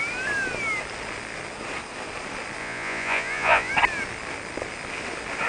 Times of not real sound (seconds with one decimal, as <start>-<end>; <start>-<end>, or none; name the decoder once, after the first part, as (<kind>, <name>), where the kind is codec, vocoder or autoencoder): 2.6-3.7 (vocoder, Vocos)